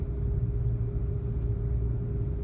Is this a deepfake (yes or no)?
no